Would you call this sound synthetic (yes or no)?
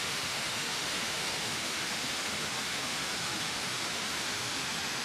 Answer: yes